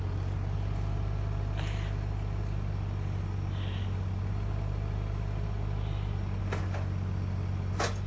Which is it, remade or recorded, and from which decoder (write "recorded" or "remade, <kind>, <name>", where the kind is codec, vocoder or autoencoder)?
recorded